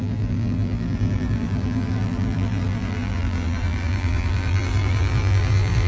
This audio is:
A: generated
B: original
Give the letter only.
A